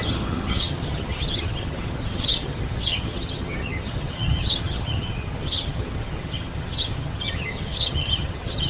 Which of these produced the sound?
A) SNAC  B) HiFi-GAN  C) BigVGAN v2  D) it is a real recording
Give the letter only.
B